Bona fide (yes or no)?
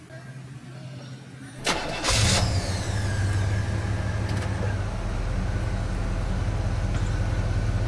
yes